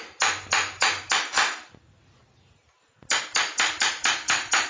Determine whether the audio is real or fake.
real